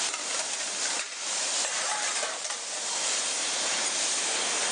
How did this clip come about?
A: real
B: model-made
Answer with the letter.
B